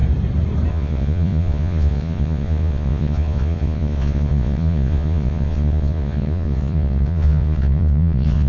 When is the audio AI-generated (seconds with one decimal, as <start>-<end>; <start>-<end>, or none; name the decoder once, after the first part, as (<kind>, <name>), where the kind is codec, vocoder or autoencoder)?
0.7-8.5 (vocoder, Vocos)